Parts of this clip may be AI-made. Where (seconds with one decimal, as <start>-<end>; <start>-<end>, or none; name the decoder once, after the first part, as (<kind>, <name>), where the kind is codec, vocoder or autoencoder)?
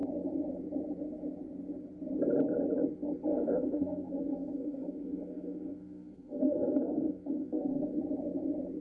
3.3-8.0 (codec, SNAC)